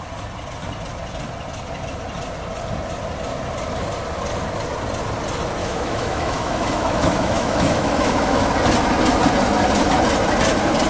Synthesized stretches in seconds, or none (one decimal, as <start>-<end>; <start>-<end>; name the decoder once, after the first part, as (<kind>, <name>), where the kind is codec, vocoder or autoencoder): 5.6-8.5 (autoencoder, DAC-VAE)